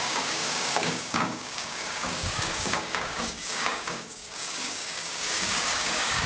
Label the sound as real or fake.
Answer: fake